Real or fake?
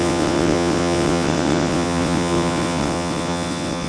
fake